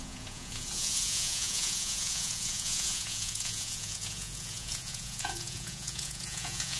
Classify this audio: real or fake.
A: fake